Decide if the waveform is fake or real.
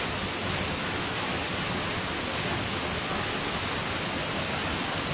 real